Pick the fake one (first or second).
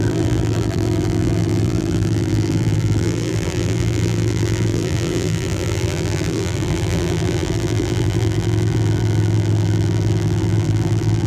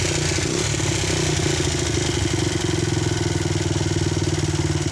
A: first